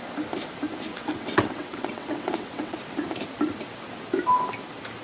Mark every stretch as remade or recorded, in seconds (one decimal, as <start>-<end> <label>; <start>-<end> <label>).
0.0-0.9 recorded; 0.9-2.8 remade; 2.8-5.0 recorded